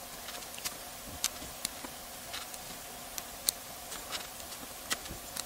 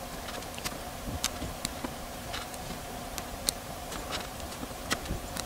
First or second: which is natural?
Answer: first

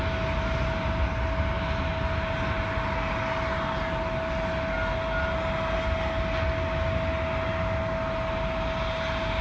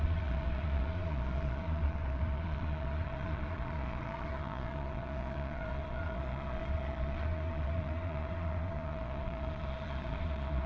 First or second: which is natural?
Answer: first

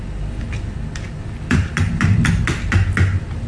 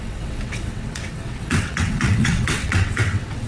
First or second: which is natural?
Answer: first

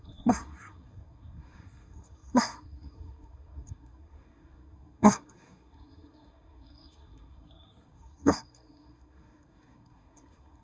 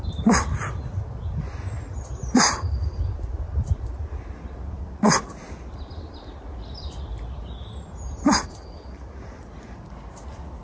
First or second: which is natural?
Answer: second